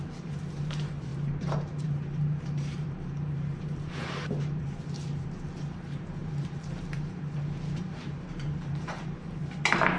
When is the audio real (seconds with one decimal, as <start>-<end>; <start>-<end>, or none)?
9.4-10.0